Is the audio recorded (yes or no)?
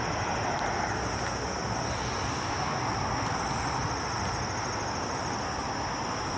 yes